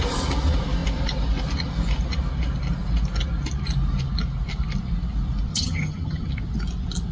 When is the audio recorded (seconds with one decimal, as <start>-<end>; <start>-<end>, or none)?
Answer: 0.0-5.5; 6.3-7.1